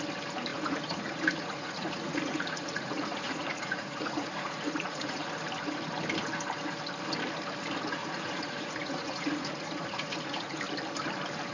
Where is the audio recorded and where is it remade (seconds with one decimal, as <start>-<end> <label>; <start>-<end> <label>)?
0.0-0.5 recorded; 0.5-5.3 remade; 5.3-8.0 recorded; 8.0-10.6 remade; 10.6-11.5 recorded

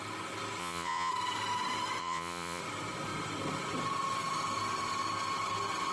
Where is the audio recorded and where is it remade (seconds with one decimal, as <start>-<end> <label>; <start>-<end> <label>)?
0.0-0.6 recorded; 0.6-1.1 remade; 1.1-2.0 recorded; 2.0-2.6 remade; 2.6-5.9 recorded

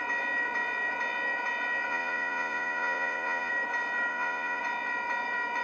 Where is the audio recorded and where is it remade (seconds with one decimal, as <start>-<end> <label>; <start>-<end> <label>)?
0.0-1.9 recorded; 1.9-3.5 remade; 3.5-4.1 recorded; 4.1-4.6 remade; 4.6-5.6 recorded